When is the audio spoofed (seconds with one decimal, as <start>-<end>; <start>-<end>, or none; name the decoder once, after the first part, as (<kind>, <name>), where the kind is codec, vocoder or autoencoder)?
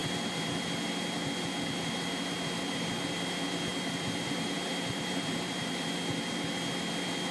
3.7-6.0 (vocoder, BigVGAN v2)